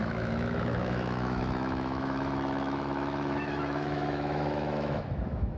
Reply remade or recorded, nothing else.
remade